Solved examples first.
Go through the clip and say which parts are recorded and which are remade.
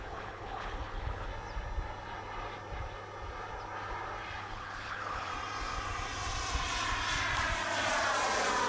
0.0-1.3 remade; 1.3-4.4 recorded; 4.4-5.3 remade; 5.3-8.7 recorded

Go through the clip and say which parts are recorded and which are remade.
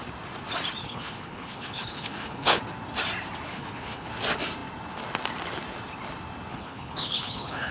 0.0-0.8 recorded; 0.8-2.6 remade; 2.6-3.5 recorded; 3.5-4.1 remade; 4.1-6.5 recorded; 6.5-7.7 remade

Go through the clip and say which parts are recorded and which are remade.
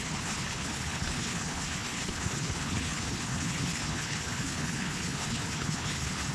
0.0-6.3 remade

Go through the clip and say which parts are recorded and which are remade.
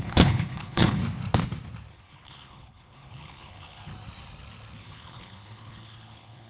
0.0-1.0 remade; 1.0-1.9 recorded; 1.9-3.9 remade; 3.9-4.8 recorded; 4.8-6.5 remade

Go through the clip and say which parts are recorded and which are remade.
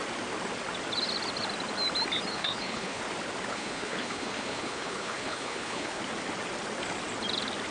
0.0-2.3 recorded; 2.3-3.0 remade; 3.0-3.5 recorded; 3.5-6.0 remade; 6.0-7.7 recorded